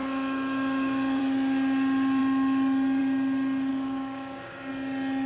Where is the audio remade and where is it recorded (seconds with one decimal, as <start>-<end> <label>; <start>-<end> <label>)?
0.0-1.2 remade; 1.2-3.7 recorded; 3.7-4.7 remade; 4.7-5.3 recorded

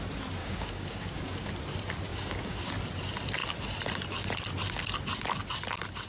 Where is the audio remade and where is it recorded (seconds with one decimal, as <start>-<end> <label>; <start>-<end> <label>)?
0.0-0.4 recorded; 0.4-1.5 remade; 1.5-2.1 recorded; 2.1-2.7 remade; 2.7-6.1 recorded